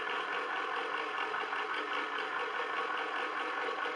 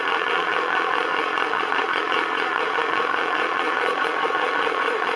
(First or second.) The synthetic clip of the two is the second